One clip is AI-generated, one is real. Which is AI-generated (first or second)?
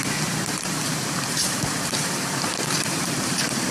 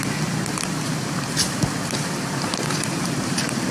first